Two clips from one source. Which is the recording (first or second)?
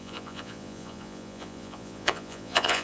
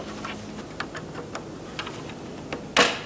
second